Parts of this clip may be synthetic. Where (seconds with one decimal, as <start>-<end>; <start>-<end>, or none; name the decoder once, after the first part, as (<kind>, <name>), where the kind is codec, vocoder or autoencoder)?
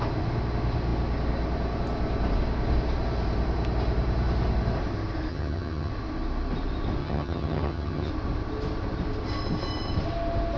5.3-5.9 (vocoder, HiFi-GAN); 7.0-8.1